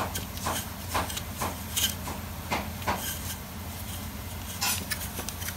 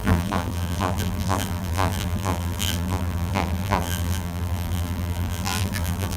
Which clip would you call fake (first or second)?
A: second